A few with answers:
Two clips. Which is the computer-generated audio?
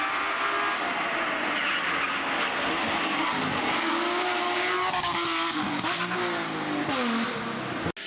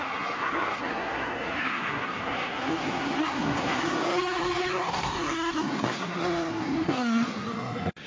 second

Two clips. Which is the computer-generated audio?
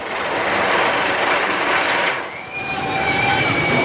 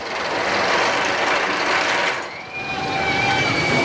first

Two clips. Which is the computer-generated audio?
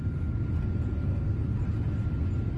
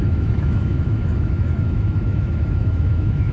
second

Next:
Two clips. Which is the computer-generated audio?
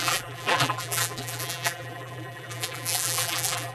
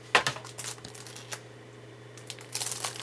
first